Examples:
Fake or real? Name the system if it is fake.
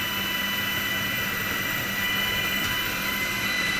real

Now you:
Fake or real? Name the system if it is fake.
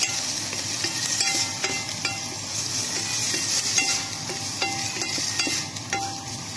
real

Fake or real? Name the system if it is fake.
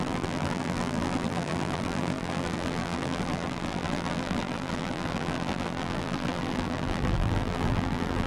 fake, vocoder, BigVGAN v2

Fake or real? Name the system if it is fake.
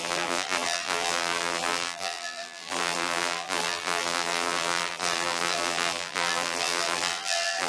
fake, vocoder, BigVGAN v2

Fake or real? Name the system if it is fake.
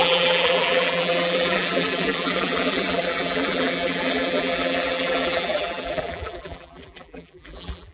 fake, vocoder, BigVGAN v2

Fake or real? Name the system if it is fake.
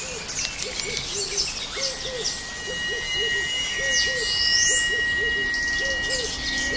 real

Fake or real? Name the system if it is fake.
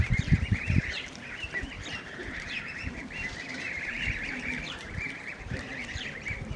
fake, vocoder, BigVGAN v2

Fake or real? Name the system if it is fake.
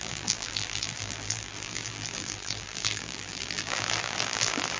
fake, vocoder, BigVGAN v2